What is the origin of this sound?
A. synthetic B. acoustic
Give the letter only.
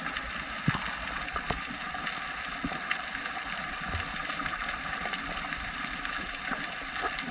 B